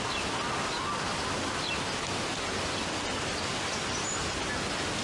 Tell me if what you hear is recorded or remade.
recorded